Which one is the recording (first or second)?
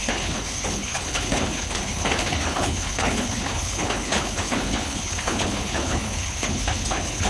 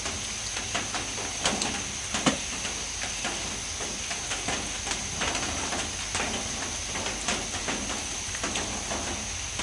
second